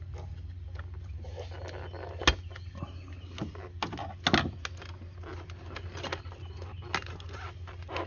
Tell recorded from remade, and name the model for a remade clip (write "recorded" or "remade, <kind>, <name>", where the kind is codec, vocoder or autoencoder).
recorded